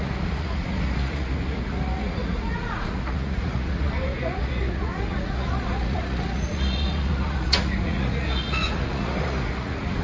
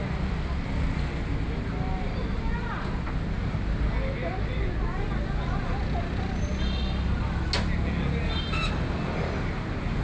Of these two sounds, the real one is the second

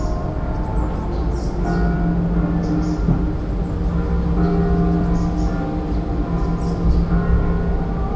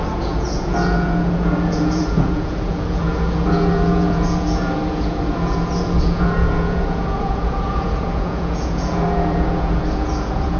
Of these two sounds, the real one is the first